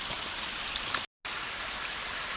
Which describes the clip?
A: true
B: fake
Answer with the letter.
A